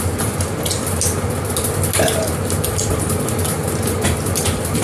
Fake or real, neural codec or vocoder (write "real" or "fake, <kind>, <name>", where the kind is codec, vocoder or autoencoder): real